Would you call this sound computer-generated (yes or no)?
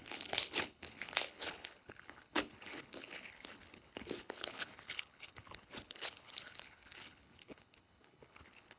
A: yes